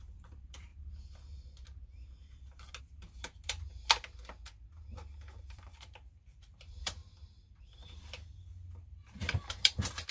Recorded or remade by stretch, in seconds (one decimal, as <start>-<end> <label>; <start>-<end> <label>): 0.0-0.7 remade; 0.7-2.8 recorded; 2.8-3.7 remade; 3.7-5.5 recorded; 5.5-7.0 remade; 7.0-7.6 recorded; 7.6-10.1 remade